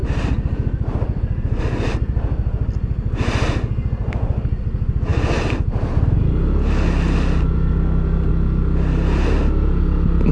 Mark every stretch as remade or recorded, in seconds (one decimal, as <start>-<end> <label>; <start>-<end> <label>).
0.0-1.6 remade; 1.6-4.0 recorded; 4.0-4.6 remade; 4.6-10.3 recorded